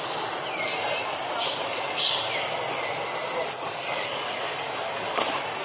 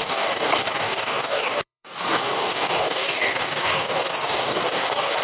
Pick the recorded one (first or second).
first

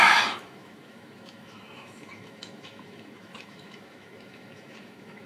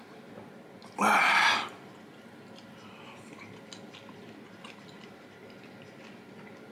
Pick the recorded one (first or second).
second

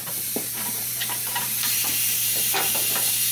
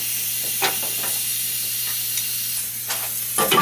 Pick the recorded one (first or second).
second